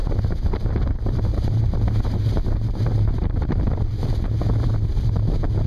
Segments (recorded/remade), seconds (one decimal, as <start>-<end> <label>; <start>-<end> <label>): 0.0-4.0 remade; 4.0-4.9 recorded; 4.9-5.7 remade